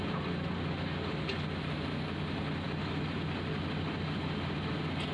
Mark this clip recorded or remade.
recorded